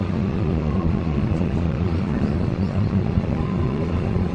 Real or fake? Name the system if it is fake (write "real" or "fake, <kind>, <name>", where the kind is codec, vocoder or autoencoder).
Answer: fake, vocoder, Vocos